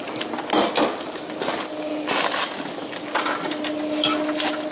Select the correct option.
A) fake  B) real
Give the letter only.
B